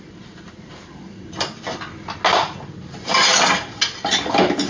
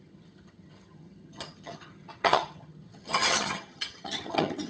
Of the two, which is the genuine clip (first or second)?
first